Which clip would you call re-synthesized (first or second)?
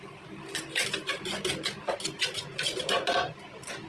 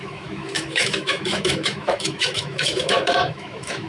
second